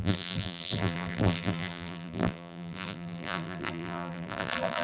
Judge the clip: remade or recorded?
remade